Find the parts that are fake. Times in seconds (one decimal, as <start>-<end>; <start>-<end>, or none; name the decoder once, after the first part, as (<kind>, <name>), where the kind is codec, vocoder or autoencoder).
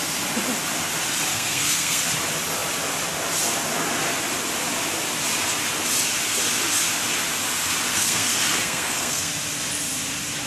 1.3-2.0 (codec, SNAC); 7.9-9.3